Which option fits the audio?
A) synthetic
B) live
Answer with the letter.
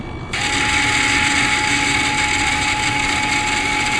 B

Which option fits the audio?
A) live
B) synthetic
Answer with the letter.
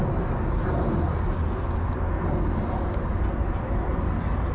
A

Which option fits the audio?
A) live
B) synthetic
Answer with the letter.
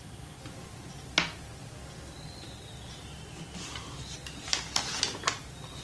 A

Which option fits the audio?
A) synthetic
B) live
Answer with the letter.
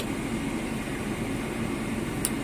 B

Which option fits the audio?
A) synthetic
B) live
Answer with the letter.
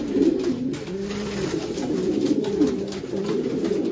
B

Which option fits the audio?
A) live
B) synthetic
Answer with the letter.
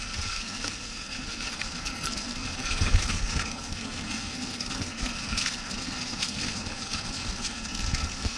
B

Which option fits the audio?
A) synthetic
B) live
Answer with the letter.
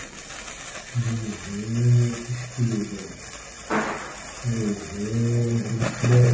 B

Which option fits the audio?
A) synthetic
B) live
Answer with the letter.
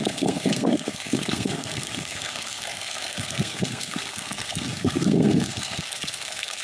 A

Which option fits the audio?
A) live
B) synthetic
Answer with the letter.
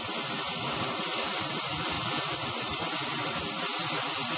A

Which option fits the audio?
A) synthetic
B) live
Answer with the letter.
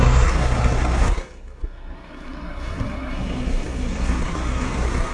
A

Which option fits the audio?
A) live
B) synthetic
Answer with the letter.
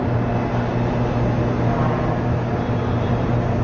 A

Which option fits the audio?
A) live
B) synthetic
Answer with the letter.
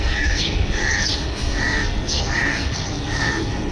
B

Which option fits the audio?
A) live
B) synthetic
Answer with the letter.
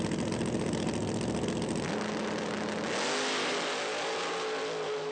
A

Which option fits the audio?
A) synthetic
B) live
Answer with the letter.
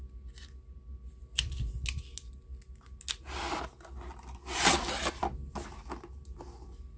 B